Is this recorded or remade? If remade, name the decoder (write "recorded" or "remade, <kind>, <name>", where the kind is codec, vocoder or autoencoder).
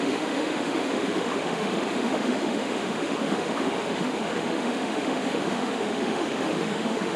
remade, autoencoder, DAC-VAE